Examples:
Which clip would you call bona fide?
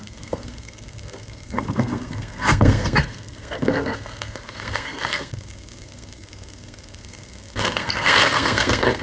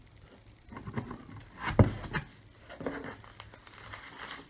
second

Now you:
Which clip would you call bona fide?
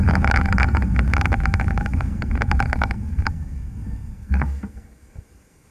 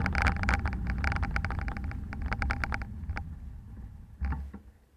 second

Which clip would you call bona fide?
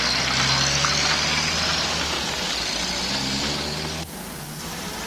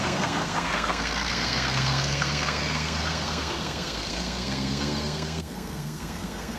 first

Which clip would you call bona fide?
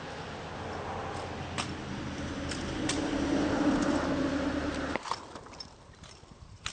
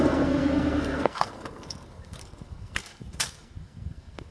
first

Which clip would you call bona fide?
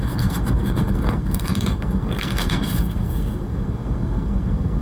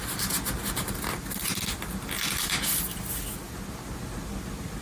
second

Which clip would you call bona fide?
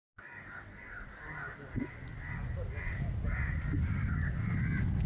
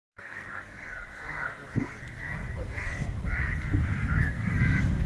first